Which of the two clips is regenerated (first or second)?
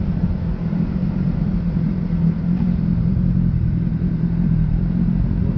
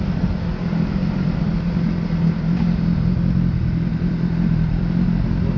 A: first